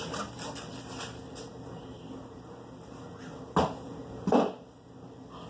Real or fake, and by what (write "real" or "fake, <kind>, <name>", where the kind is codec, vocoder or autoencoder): fake, vocoder, BigVGAN v2